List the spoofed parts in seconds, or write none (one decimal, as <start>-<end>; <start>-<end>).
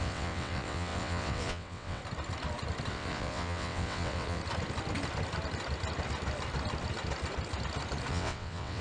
0.0-2.0; 2.9-4.4; 8.1-8.8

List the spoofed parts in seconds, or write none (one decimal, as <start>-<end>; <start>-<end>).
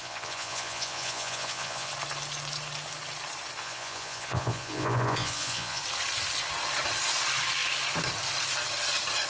0.0-1.9; 3.6-5.8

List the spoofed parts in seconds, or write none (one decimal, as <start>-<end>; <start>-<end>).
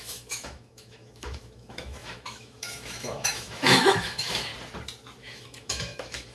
0.0-4.5; 5.2-6.3